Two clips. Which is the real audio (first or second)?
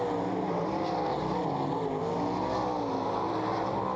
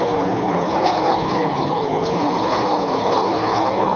first